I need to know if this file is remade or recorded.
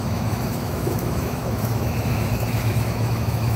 remade